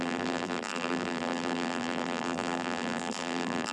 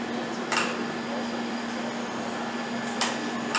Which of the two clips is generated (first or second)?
first